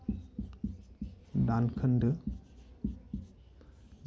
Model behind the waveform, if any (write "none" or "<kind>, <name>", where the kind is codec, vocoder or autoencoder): none